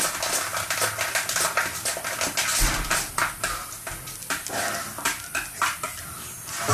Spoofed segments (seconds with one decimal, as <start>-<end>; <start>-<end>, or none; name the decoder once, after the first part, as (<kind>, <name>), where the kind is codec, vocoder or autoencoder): none